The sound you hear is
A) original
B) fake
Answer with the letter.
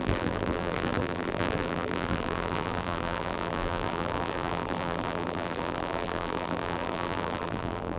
B